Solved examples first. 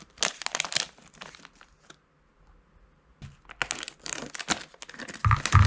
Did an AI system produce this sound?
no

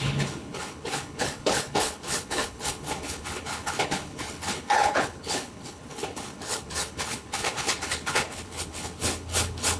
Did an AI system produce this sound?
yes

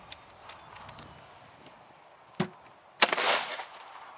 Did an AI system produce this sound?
no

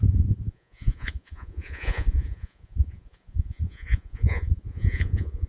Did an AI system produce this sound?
yes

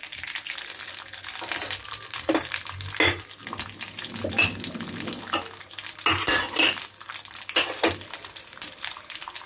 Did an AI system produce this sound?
no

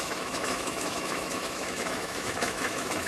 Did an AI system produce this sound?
yes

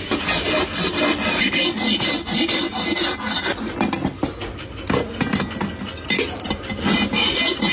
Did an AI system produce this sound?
no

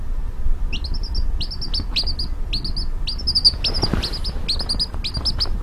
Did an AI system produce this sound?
no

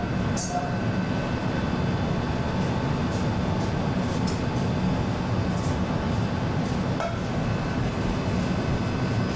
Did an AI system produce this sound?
no